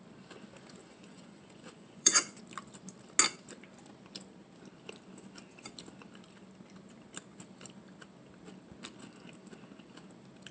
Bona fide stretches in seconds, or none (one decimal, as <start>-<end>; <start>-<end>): 0.0-0.8; 2.4-10.5